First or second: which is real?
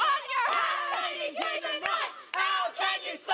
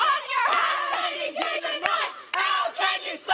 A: first